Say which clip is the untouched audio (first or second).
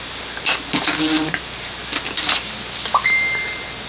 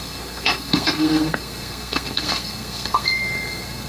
first